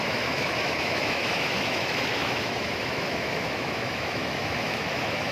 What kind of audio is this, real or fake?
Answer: fake